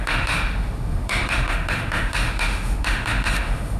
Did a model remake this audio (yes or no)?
yes